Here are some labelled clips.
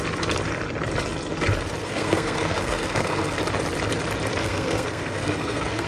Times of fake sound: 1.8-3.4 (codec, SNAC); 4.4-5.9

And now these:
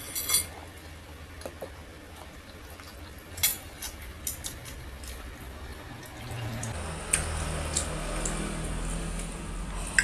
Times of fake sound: none

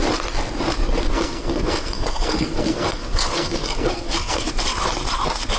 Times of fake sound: 1.1-4.5 (codec, SNAC)